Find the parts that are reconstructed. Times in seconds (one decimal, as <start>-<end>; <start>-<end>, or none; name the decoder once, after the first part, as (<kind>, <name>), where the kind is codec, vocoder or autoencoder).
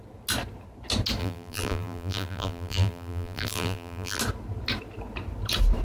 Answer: 1.2-4.2 (vocoder, BigVGAN v2)